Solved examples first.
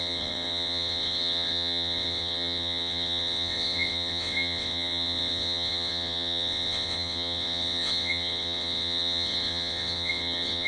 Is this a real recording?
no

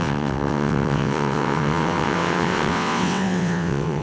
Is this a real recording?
no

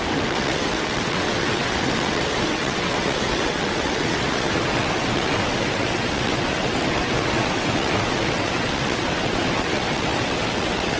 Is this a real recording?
no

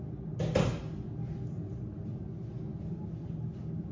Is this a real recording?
yes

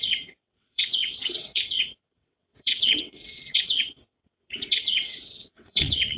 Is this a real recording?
no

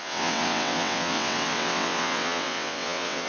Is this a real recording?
no